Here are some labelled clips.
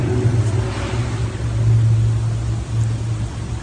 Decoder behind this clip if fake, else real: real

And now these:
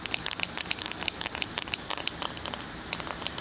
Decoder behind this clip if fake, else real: fake, vocoder, BigVGAN v2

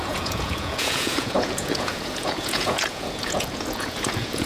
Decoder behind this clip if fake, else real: fake, vocoder, Vocos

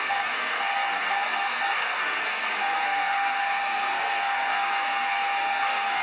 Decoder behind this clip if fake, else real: fake, codec, SNAC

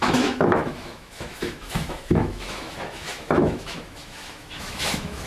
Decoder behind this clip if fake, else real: fake, autoencoder, DAC-VAE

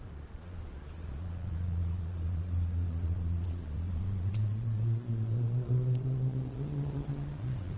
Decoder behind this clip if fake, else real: fake, vocoder, Vocos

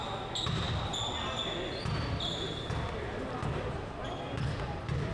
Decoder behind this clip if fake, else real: real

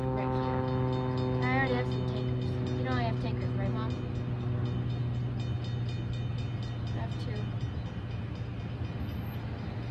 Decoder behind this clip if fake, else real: real